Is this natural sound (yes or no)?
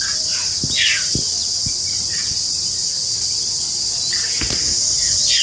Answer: yes